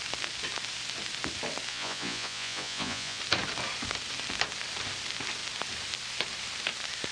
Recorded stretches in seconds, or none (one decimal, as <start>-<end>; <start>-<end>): 0.0-1.7; 3.2-7.1